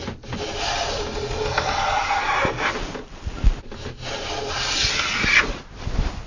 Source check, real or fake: real